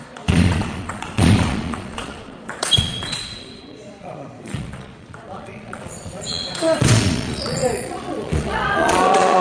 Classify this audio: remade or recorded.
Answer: remade